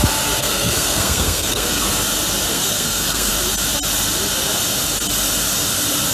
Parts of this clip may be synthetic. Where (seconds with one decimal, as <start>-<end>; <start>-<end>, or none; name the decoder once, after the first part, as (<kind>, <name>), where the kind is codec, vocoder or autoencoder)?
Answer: 0.4-1.8 (codec, SNAC); 2.5-3.3